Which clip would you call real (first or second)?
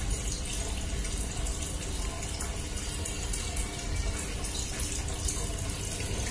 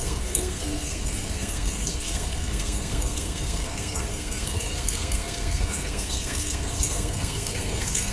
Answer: first